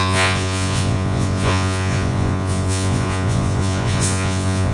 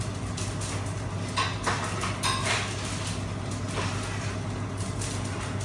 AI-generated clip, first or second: first